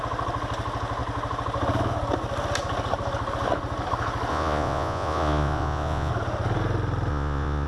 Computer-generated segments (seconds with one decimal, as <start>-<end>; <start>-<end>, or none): 4.3-6.1; 7.1-7.7